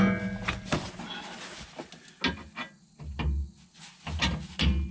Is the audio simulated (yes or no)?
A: no